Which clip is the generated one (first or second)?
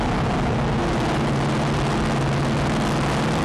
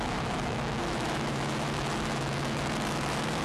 second